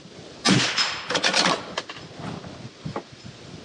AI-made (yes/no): no